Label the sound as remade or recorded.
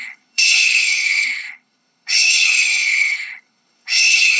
remade